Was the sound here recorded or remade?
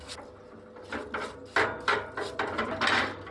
recorded